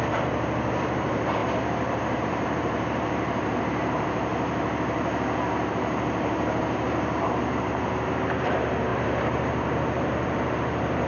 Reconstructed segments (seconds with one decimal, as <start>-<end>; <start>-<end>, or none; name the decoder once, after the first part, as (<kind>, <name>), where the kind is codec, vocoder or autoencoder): 0.0-4.3 (vocoder, BigVGAN v2); 5.7-11.1